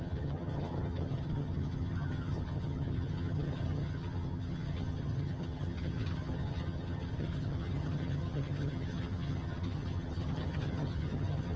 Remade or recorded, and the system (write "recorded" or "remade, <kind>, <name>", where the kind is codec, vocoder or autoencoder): remade, vocoder, HiFi-GAN